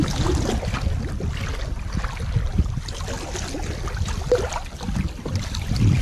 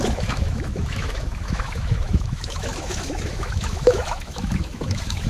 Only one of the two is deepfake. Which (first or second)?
second